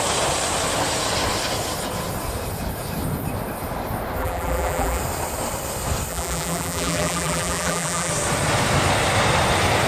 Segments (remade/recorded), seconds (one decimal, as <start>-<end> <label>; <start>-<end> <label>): 0.0-4.2 recorded; 4.2-5.0 remade; 5.0-6.1 recorded; 6.1-8.1 remade; 8.1-9.9 recorded